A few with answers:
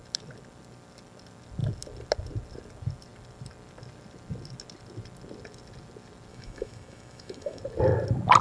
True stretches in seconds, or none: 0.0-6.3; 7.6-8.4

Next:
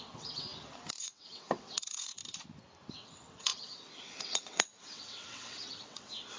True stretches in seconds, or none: 0.5-1.0; 2.2-2.9

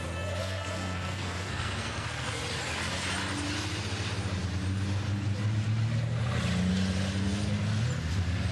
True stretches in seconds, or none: 0.0-0.4; 2.4-8.5

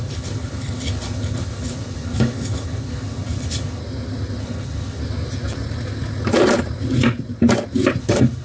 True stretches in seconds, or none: 3.8-4.4; 5.0-8.0

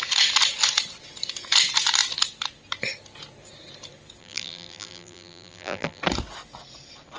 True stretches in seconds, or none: 0.0-4.2; 6.0-7.2

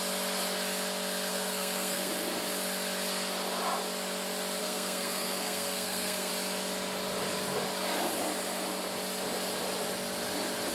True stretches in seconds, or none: 0.0-1.3; 2.1-4.6; 6.3-10.7

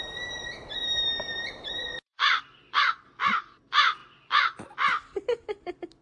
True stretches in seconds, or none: 0.0-0.8; 3.0-6.0

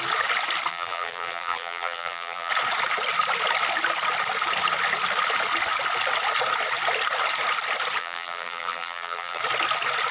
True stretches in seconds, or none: 0.0-0.7; 2.5-8.0; 9.4-10.1